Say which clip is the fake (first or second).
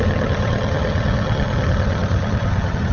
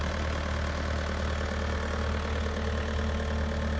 first